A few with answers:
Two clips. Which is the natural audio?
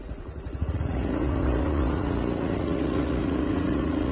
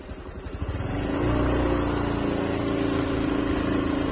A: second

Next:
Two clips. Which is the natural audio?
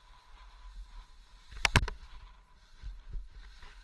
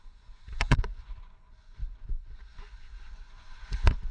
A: first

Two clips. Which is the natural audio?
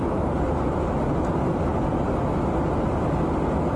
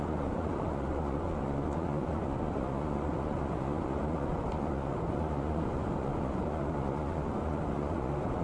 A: first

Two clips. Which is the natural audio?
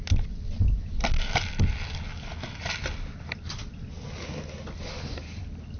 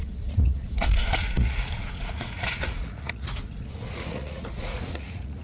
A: first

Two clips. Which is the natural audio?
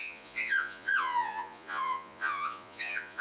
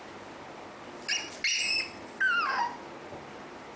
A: second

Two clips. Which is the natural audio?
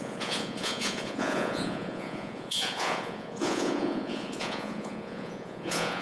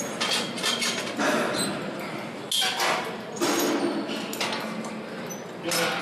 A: second